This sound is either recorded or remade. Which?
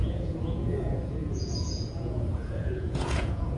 remade